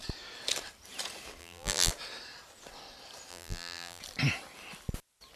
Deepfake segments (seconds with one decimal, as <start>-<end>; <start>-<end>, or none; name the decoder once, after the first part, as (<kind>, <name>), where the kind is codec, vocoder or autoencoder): 1.4-1.9 (vocoder, BigVGAN v2); 3.3-4.0